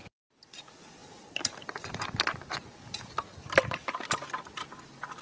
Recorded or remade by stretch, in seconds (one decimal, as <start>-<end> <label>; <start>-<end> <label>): 0.0-5.2 recorded